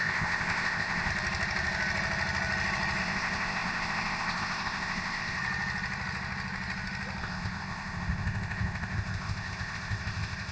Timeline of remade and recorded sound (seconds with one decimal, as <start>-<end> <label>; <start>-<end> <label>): 0.0-1.1 remade; 1.1-3.0 recorded; 3.0-5.4 remade; 5.4-7.2 recorded; 7.2-10.5 remade